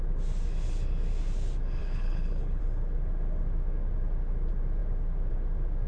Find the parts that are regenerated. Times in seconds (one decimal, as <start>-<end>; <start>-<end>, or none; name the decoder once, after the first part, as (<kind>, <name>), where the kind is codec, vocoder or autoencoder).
1.8-2.6 (codec, HILCodec)